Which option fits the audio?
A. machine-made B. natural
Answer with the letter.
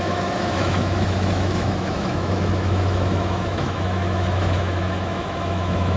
A